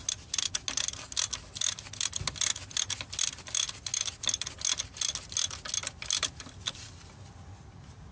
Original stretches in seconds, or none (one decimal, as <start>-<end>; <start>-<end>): 0.0-8.1